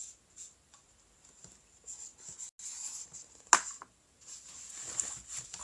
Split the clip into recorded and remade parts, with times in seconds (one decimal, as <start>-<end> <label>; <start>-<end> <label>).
0.0-5.6 recorded